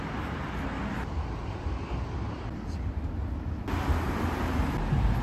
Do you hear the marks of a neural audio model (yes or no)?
no